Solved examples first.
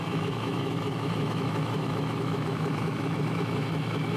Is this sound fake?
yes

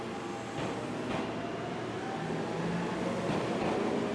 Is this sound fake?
no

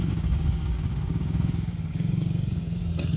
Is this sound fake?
yes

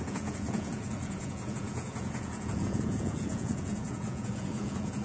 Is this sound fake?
yes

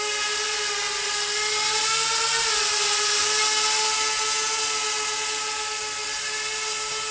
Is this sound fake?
no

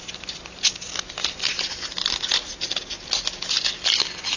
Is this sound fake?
no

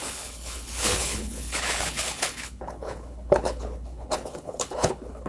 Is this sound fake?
yes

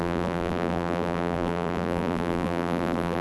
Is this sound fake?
yes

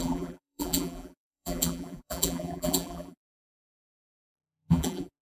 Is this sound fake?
yes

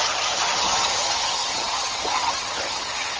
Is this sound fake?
yes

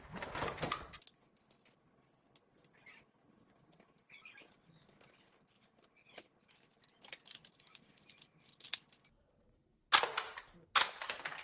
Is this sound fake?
no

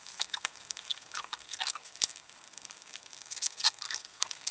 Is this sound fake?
yes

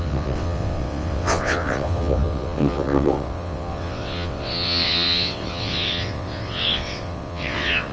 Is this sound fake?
yes